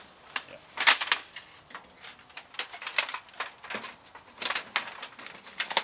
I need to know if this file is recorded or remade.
recorded